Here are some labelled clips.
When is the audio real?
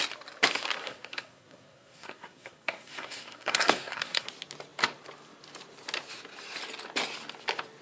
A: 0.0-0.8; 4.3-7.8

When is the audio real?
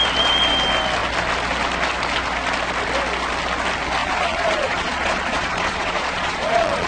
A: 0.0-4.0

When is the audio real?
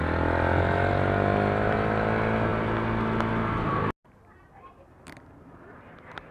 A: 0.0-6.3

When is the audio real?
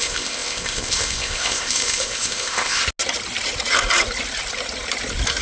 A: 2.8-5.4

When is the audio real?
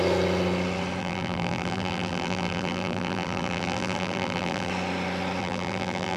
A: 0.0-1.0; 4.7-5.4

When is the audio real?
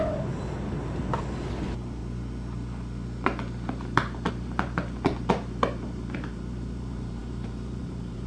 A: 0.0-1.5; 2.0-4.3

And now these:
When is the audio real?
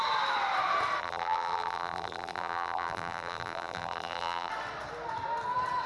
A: 0.0-1.0; 4.5-5.9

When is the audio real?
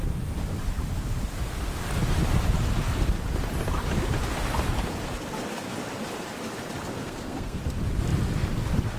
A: 0.0-7.0; 7.6-9.0